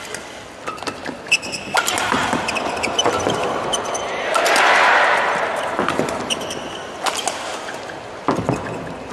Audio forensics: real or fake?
real